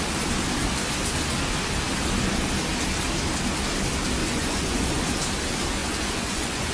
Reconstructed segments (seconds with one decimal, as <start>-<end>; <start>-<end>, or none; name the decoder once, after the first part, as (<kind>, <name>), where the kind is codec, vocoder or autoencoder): 4.2-4.9 (vocoder, Vocos); 5.8-6.7